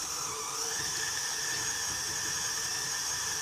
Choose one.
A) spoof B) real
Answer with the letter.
A